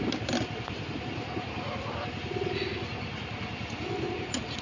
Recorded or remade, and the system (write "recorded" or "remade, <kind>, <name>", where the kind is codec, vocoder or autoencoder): recorded